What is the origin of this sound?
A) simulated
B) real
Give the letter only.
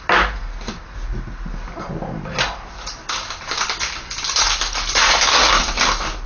B